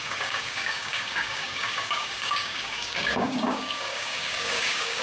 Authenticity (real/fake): fake